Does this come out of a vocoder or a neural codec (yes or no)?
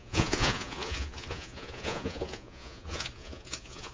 yes